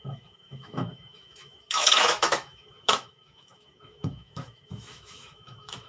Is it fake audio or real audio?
fake